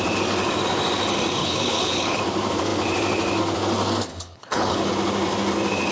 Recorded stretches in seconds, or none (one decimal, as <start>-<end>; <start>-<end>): 0.0-1.4; 2.2-4.1; 4.9-5.9